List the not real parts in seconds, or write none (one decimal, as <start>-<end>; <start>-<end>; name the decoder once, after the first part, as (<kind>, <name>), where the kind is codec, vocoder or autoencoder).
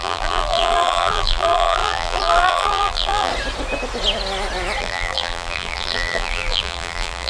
0.0-3.3 (vocoder, BigVGAN v2); 4.8-7.3